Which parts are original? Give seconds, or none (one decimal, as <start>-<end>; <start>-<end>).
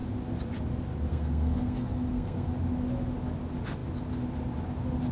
0.0-1.1; 2.5-5.1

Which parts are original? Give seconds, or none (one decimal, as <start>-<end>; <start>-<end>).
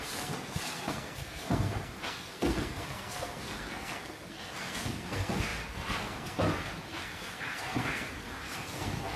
none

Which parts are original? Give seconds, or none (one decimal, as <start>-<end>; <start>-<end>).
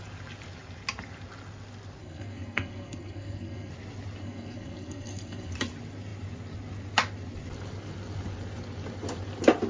0.0-2.0; 3.7-4.2; 5.5-9.7